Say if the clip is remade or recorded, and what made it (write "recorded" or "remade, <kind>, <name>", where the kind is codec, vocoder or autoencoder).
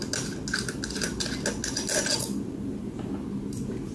recorded